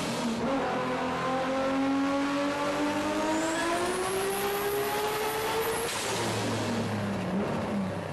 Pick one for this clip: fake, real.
real